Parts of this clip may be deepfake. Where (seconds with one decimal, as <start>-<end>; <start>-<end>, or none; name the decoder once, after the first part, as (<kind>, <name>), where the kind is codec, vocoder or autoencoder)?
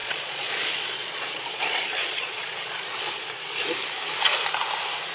0.0-3.1 (vocoder, Vocos)